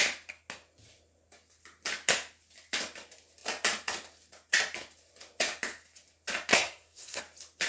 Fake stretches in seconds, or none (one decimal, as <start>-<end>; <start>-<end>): 6.5-7.2